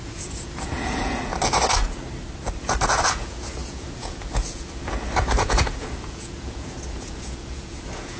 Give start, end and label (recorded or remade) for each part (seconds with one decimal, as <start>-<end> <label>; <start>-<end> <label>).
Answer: 0.0-1.3 remade; 1.3-2.6 recorded; 2.6-8.2 remade